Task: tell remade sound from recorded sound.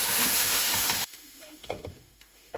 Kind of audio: remade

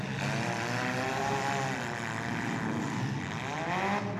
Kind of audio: recorded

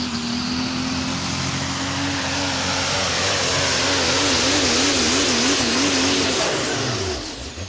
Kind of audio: recorded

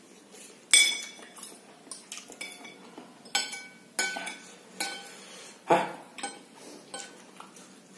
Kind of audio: recorded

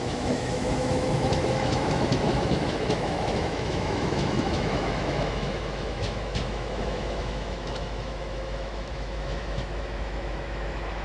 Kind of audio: remade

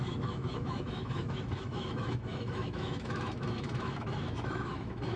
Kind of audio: remade